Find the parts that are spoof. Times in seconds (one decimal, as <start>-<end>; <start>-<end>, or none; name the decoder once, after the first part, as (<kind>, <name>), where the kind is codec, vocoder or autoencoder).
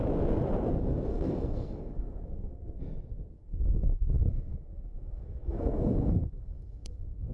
1.1-2.8 (codec, SNAC); 3.4-7.3